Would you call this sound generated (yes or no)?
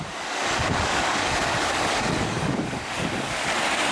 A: yes